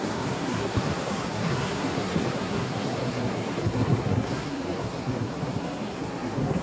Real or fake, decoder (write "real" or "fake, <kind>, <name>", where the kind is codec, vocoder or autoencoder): fake, codec, SNAC